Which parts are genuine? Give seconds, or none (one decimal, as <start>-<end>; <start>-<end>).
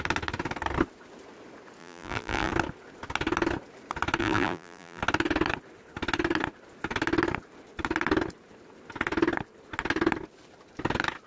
0.0-1.8; 2.5-4.2; 5.0-11.3